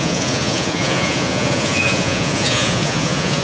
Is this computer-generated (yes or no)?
yes